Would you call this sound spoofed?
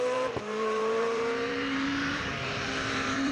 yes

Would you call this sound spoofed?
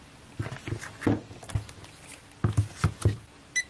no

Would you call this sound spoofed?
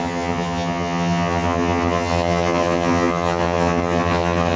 yes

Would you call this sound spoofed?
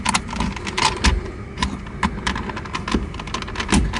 no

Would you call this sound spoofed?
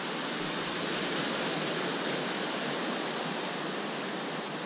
no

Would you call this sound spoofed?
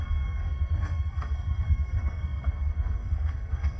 yes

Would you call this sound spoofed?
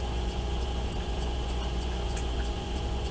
yes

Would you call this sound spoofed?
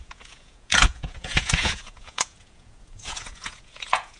yes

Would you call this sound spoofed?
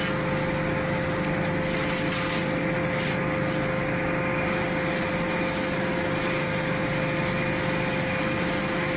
no